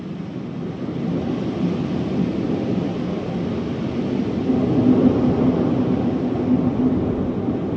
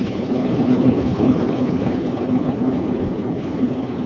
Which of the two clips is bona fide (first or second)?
first